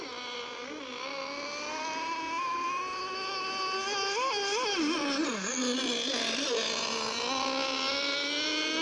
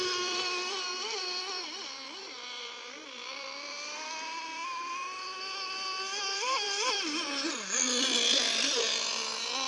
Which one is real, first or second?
first